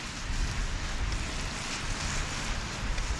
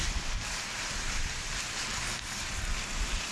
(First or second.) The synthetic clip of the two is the second